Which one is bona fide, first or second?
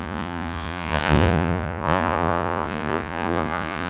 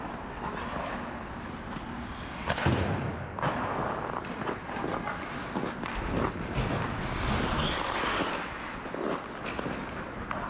second